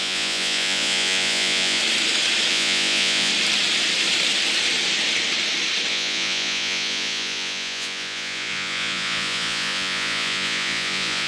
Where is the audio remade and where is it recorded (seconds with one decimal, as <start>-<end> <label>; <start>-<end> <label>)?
0.0-1.8 remade; 1.8-2.5 recorded; 2.5-3.3 remade; 3.3-5.9 recorded; 5.9-11.3 remade